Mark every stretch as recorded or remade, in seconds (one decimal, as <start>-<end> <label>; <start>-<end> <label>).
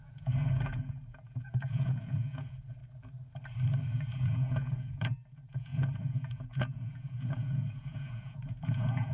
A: 0.0-2.8 remade; 2.8-3.9 recorded; 3.9-9.1 remade